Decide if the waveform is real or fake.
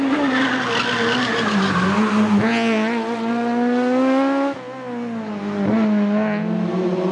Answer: real